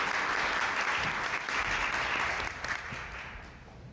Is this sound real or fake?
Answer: real